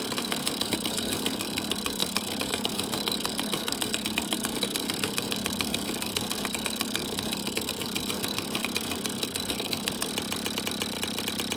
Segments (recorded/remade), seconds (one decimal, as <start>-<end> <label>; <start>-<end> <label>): 0.0-10.1 remade; 10.1-11.6 recorded